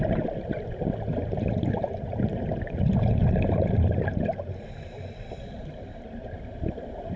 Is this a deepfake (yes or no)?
no